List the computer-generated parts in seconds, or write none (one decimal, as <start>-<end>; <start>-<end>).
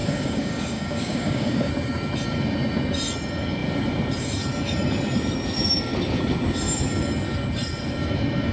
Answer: 0.0-1.7